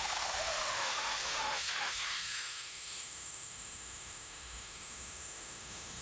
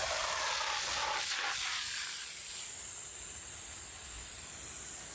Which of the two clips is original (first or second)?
second